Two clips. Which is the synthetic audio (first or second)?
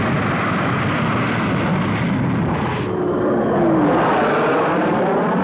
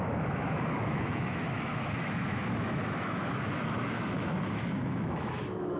second